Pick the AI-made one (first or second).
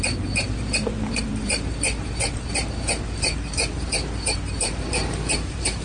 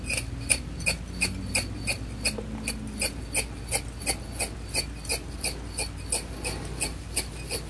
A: first